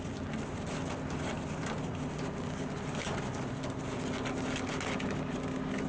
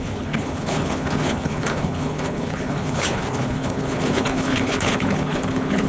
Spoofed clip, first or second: second